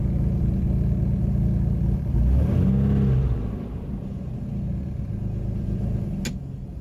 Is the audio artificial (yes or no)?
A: no